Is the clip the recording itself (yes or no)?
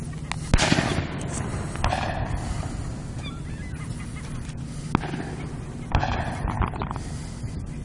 yes